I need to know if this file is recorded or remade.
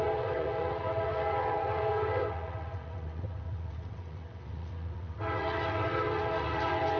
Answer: remade